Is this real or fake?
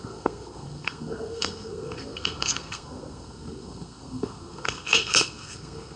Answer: fake